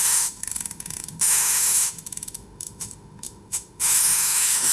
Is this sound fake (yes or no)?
yes